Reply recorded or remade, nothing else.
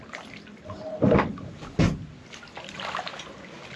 recorded